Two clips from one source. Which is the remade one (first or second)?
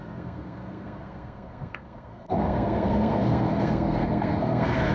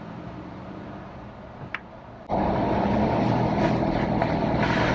first